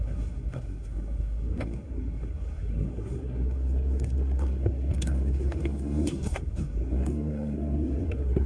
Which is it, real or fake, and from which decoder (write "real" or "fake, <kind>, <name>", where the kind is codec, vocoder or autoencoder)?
fake, codec, SNAC